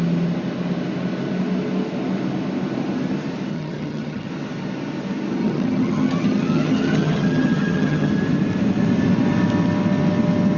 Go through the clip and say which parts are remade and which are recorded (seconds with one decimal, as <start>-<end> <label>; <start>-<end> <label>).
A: 0.0-3.5 recorded; 3.5-4.3 remade; 4.3-5.4 recorded; 5.4-8.1 remade; 8.1-10.6 recorded